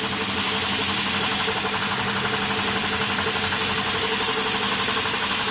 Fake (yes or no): no